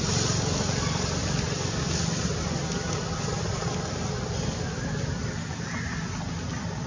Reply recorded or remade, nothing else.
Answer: recorded